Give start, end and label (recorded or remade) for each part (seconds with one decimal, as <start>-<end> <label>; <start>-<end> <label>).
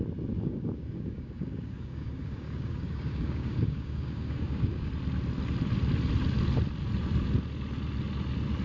0.0-0.4 recorded; 0.4-4.9 remade; 4.9-8.6 recorded